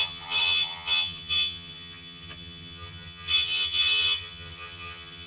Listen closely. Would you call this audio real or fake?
fake